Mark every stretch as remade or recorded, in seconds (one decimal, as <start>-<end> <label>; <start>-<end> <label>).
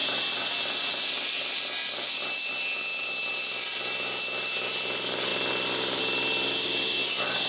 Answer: 0.0-2.5 remade; 2.5-2.9 recorded; 2.9-3.8 remade; 3.8-7.5 recorded